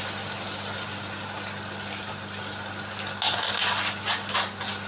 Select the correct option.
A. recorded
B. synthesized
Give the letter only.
A